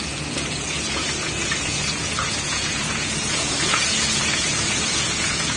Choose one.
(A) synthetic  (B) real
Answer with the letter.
A